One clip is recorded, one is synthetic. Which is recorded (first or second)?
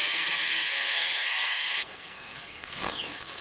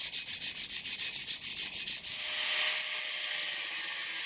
second